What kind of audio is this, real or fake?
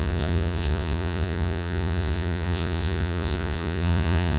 fake